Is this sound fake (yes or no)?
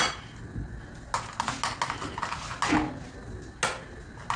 no